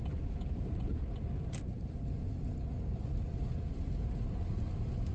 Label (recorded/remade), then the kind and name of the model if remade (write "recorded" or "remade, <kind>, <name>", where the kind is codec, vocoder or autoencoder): recorded